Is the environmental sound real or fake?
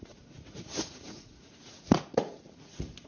fake